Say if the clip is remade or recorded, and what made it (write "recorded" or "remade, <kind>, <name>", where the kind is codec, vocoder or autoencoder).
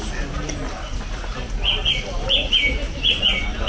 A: recorded